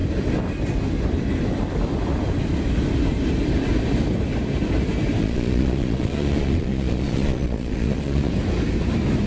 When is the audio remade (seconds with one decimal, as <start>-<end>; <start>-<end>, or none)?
5.2-8.3